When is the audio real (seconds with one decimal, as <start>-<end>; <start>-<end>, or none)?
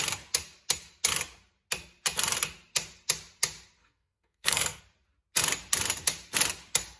0.0-3.8; 4.8-7.0